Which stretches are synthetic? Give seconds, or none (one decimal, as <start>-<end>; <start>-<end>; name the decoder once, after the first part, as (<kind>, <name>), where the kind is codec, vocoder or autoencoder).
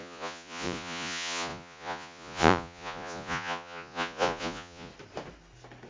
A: 0.0-4.9 (vocoder, Vocos)